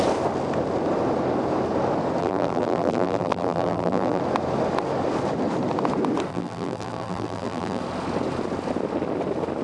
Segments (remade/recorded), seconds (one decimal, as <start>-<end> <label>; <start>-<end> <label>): 0.0-2.2 recorded; 2.2-4.2 remade; 4.2-6.3 recorded; 6.3-7.8 remade; 7.8-9.6 recorded